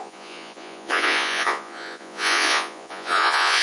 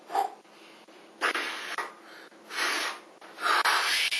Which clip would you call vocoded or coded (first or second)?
first